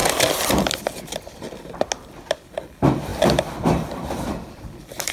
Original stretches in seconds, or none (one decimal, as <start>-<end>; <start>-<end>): 0.0-2.5